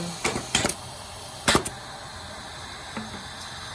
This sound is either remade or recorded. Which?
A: recorded